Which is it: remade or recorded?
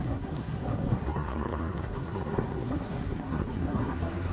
remade